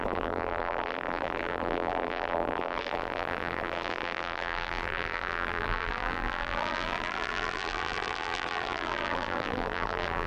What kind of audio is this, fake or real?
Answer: fake